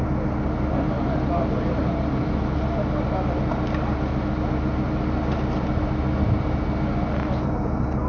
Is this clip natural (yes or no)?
yes